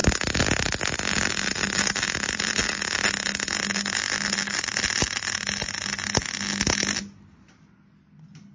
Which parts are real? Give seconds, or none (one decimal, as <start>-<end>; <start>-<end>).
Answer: 0.0-8.5